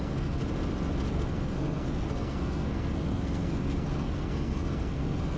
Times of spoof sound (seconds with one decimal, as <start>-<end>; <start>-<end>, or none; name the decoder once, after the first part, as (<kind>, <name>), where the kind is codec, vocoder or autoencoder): 0.0-0.4 (codec, SNAC); 1.1-5.4